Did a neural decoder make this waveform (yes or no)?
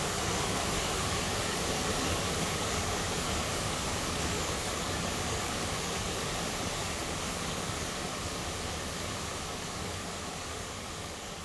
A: yes